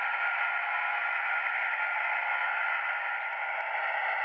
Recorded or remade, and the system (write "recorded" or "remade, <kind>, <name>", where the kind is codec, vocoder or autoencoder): recorded